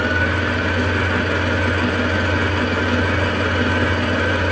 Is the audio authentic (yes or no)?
yes